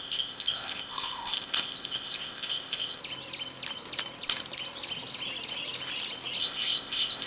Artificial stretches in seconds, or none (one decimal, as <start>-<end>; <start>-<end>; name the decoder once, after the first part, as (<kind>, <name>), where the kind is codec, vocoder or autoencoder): 0.0-3.0 (codec, ZipCodec); 6.4-7.3